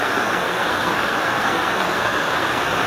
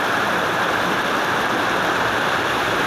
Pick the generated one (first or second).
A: first